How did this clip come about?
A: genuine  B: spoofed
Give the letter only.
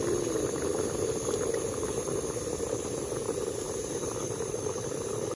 A